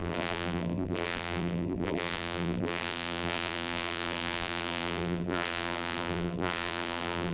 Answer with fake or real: fake